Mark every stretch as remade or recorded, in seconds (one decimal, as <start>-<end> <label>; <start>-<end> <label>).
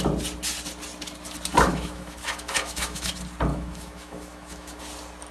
0.0-1.7 recorded; 1.7-3.1 remade; 3.1-3.5 recorded; 3.5-4.8 remade; 4.8-5.3 recorded